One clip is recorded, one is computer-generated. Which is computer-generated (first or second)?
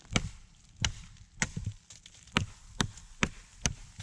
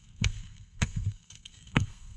second